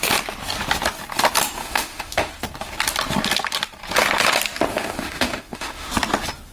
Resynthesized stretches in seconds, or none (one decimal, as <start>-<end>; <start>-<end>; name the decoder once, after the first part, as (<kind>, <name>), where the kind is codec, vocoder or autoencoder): 1.6-2.3 (autoencoder, DAC-VAE); 4.7-5.9